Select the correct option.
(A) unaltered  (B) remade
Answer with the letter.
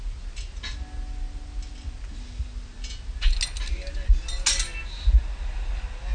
A